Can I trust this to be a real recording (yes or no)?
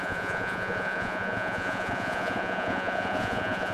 no